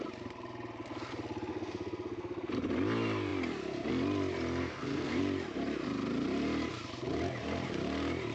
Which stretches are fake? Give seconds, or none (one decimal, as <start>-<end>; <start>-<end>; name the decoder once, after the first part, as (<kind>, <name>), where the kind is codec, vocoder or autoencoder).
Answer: 1.5-2.5 (codec, SNAC); 4.6-5.2